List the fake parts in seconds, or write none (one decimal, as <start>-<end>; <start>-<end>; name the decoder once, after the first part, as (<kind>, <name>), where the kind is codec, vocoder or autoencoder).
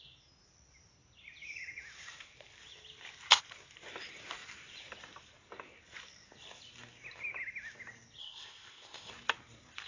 8.2-9.1 (codec, ZipCodec)